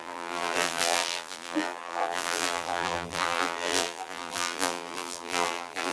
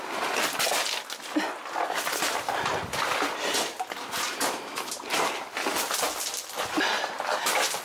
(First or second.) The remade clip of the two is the first